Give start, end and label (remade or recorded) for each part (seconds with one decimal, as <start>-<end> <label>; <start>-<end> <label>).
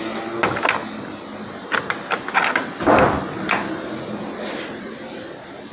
0.0-5.7 recorded